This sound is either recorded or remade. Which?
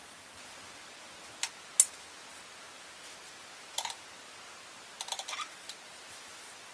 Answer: recorded